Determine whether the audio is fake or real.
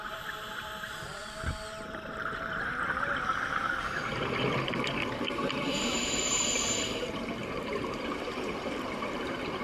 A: fake